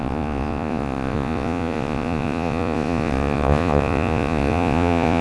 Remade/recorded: remade